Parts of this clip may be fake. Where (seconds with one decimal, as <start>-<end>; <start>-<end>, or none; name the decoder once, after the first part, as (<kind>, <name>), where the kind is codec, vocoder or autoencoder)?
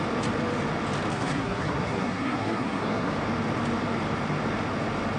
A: 1.1-3.1 (codec, SNAC)